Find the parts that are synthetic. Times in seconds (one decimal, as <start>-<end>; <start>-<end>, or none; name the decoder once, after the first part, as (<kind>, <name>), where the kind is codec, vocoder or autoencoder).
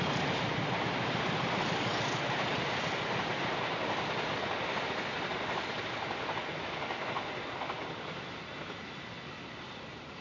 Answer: none